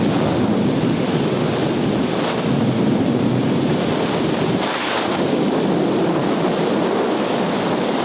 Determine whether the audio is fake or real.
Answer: real